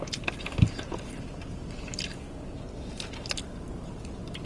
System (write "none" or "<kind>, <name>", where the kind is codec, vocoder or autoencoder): none